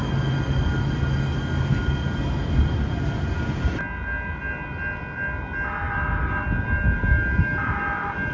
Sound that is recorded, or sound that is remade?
recorded